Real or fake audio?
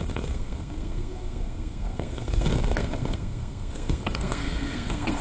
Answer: fake